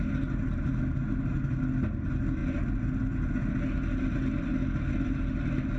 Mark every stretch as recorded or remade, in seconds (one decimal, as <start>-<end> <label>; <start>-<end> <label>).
0.0-5.8 recorded